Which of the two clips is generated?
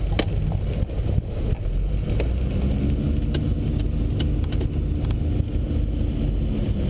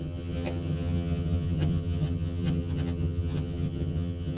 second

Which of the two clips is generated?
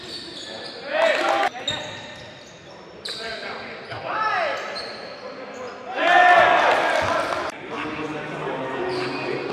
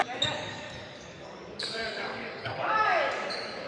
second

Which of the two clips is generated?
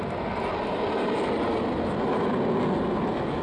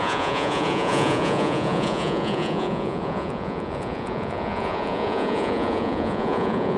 second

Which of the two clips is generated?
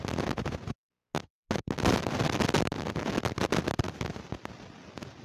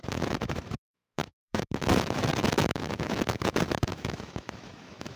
second